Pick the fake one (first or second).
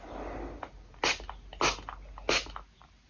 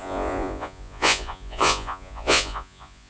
second